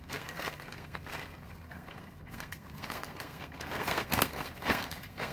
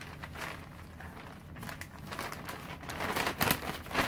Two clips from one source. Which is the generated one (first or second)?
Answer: first